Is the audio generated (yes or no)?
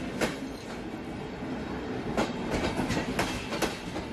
no